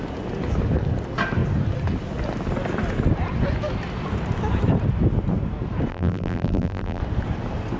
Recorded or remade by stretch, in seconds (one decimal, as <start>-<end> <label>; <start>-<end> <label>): 0.0-5.9 recorded; 5.9-7.0 remade; 7.0-7.8 recorded